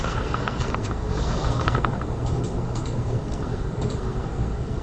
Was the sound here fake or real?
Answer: fake